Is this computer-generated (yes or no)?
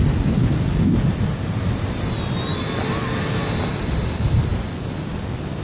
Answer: no